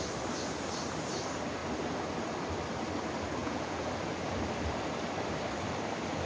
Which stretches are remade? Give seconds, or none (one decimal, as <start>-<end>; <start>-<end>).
3.4-3.9